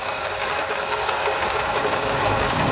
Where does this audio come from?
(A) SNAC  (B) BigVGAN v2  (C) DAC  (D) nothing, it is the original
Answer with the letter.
C